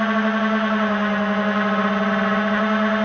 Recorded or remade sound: recorded